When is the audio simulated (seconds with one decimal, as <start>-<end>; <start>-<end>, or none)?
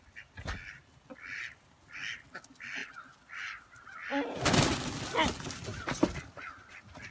none